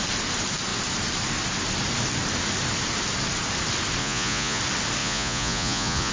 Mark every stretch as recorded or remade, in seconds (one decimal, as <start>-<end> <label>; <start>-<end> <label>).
0.0-4.0 recorded; 4.0-4.6 remade; 4.6-5.0 recorded; 5.0-6.1 remade